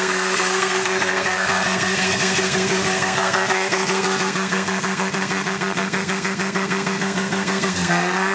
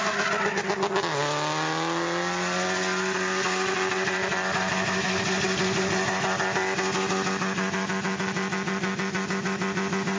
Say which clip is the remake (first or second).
first